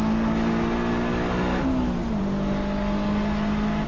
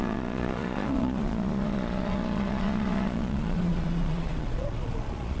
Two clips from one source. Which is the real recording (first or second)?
first